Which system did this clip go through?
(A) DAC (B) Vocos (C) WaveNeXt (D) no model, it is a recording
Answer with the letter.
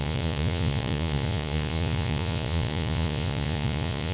B